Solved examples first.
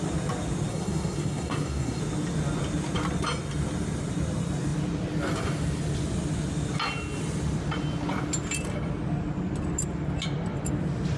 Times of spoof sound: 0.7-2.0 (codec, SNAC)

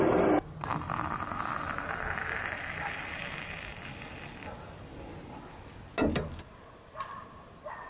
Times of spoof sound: none

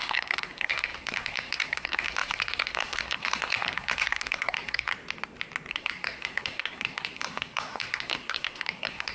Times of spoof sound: 0.0-4.9 (codec, SNAC); 5.7-9.1

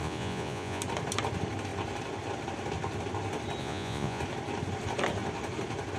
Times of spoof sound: 0.0-0.8 (vocoder, Vocos); 3.6-4.2

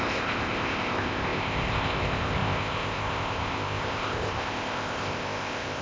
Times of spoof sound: 0.0-5.8 (codec, ZipCodec)

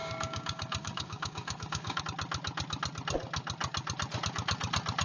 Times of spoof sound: 0.0-2.0 (codec, DAC)